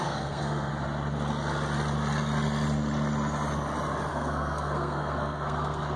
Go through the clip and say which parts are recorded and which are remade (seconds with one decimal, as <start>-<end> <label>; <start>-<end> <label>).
0.0-0.7 remade; 0.7-4.1 recorded; 4.1-6.0 remade